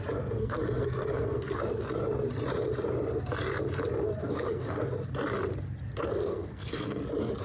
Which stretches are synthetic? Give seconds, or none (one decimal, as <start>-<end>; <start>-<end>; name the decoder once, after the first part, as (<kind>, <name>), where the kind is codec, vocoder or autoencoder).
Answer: 0.4-1.6 (codec, SNAC); 4.2-4.8; 6.3-7.0